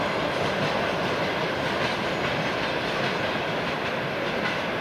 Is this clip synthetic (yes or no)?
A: no